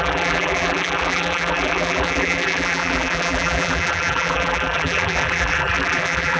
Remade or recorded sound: remade